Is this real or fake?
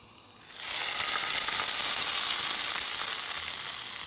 real